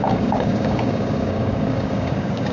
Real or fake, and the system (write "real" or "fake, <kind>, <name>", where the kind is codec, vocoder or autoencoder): fake, codec, DAC